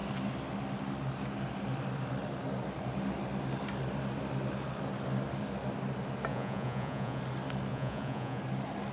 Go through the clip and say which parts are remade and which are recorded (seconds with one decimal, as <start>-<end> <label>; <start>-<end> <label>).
0.0-6.3 recorded; 6.3-7.2 remade; 7.2-7.7 recorded; 7.7-8.4 remade; 8.4-8.9 recorded